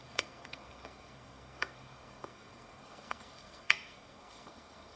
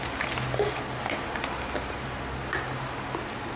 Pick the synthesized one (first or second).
first